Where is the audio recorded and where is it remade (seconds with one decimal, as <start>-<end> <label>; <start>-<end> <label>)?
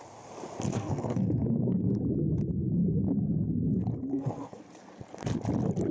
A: 0.0-0.7 recorded; 0.7-1.9 remade; 1.9-4.1 recorded; 4.1-4.6 remade; 4.6-5.9 recorded